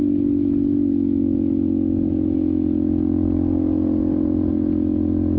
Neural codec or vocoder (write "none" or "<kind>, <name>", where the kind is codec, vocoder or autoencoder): none